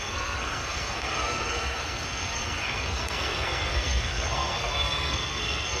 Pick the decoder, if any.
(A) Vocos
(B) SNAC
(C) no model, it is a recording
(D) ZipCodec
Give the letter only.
B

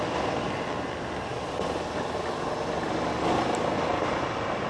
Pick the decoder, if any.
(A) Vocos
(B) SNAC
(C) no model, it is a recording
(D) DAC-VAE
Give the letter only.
C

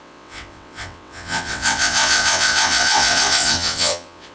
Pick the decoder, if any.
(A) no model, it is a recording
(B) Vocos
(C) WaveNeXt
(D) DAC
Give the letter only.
C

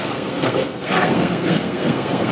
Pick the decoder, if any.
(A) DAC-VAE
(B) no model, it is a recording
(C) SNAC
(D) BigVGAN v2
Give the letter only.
C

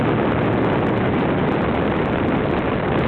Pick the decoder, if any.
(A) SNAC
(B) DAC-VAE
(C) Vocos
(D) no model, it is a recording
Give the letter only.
D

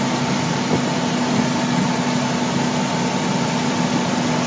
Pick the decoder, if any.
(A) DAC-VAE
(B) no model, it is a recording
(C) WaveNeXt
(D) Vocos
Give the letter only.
B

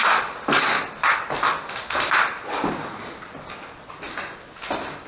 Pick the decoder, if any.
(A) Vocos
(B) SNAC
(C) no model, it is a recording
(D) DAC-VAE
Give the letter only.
C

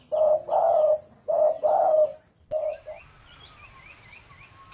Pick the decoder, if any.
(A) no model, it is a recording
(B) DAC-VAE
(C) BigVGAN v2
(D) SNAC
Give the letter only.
A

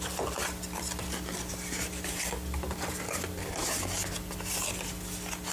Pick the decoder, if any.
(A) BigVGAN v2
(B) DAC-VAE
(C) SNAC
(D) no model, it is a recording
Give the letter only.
D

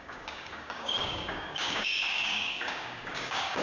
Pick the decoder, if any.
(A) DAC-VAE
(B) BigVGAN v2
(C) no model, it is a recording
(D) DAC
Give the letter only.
D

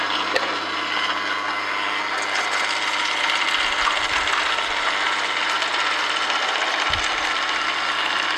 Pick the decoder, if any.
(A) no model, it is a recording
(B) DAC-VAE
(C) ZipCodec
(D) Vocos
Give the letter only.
A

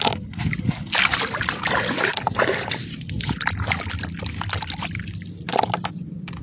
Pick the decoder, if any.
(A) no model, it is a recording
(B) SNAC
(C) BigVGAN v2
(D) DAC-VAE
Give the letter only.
A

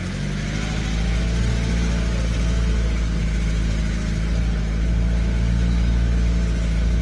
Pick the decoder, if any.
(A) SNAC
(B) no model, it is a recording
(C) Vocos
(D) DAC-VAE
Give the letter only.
B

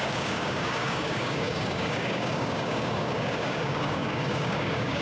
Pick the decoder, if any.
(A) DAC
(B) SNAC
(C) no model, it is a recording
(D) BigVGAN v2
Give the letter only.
A